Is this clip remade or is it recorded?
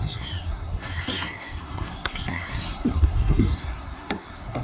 remade